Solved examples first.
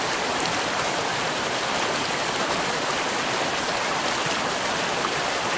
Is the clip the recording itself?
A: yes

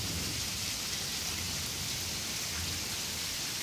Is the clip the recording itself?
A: yes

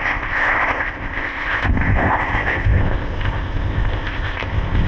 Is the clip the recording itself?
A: no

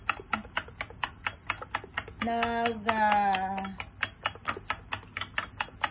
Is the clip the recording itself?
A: yes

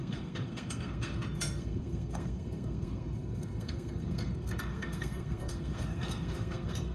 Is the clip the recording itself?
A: no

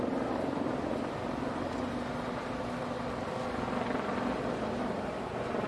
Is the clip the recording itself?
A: yes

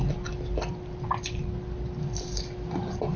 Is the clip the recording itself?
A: yes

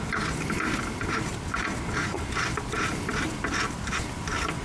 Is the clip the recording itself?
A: yes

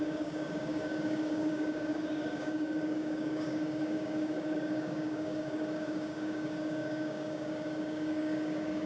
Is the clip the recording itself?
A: no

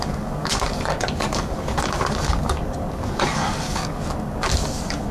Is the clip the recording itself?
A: no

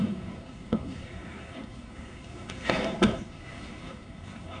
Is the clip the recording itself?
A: no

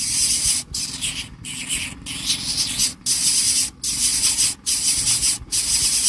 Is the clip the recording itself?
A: yes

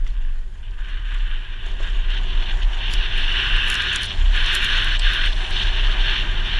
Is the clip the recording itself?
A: yes